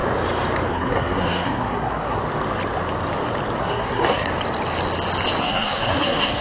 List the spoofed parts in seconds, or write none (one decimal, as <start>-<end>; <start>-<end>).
0.7-2.2; 3.6-4.3; 5.4-6.4